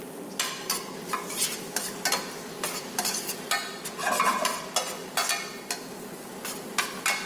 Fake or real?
real